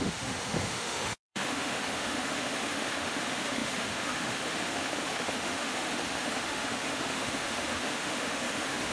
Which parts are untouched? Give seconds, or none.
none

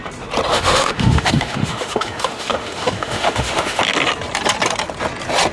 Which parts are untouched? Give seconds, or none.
0.0-0.5; 3.8-5.5

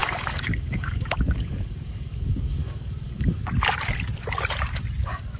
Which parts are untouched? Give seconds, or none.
3.4-5.0

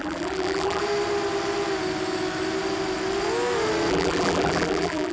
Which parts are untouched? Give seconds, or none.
0.8-3.9

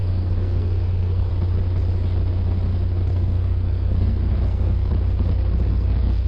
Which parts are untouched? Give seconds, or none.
1.3-3.1; 4.9-5.7

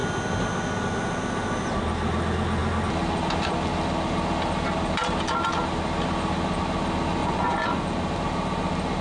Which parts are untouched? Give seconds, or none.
0.0-7.2; 7.7-9.0

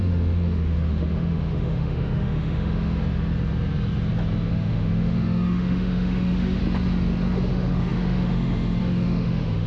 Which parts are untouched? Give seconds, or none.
3.0-4.5; 6.6-7.5